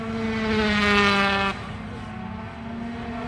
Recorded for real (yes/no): yes